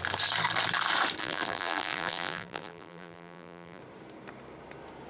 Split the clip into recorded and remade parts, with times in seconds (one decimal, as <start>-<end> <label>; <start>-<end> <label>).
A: 0.0-1.2 recorded; 1.2-3.8 remade; 3.8-5.1 recorded